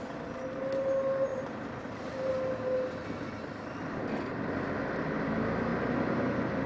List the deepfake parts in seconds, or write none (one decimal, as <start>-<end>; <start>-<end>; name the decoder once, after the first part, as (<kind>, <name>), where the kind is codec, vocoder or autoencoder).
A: 1.3-2.3 (vocoder, BigVGAN v2); 3.8-4.3